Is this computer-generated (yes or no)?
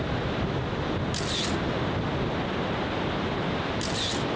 no